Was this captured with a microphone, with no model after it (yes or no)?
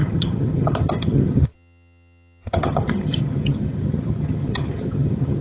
no